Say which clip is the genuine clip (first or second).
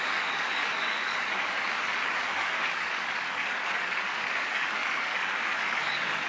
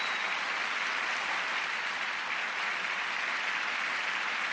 second